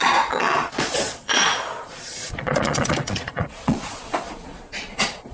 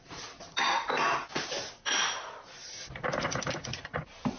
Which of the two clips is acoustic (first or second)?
second